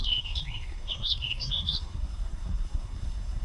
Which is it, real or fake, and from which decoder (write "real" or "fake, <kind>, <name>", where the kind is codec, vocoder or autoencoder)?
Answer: fake, codec, SNAC